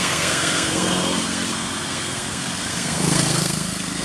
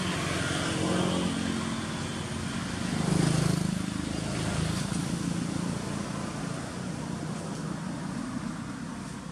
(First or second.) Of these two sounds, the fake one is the first